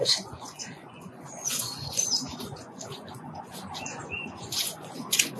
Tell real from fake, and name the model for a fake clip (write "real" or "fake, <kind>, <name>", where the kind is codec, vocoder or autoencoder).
fake, vocoder, Vocos